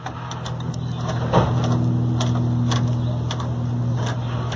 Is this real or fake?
real